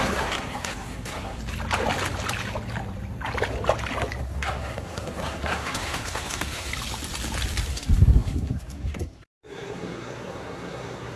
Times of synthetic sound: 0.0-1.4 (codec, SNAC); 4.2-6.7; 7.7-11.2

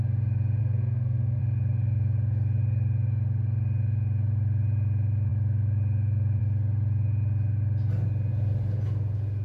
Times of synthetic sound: 0.6-1.4 (codec, SNAC)

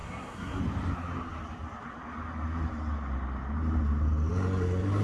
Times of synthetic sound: 0.0-0.6 (codec, SNAC)

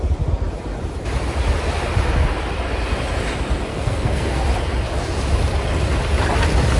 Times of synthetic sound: 3.7-4.4 (codec, SNAC)

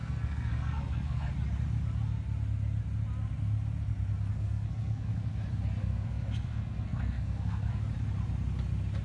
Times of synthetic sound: 0.0-1.3 (codec, SNAC); 4.3-5.1; 5.8-7.8

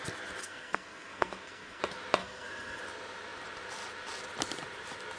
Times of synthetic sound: 0.4-1.8 (codec, SNAC); 2.2-2.8

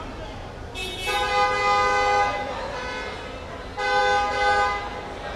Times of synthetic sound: none